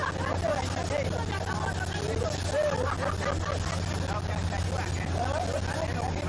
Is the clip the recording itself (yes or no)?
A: yes